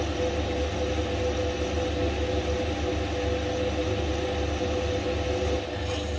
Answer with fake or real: real